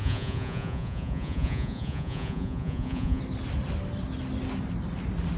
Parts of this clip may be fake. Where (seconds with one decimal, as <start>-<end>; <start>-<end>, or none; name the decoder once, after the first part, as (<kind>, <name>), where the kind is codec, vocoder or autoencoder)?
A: 0.0-3.2 (vocoder, Vocos)